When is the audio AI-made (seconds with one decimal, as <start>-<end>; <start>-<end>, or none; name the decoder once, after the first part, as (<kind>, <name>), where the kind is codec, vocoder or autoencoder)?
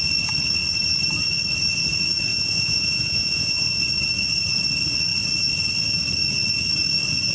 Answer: 2.3-3.8 (vocoder, Vocos)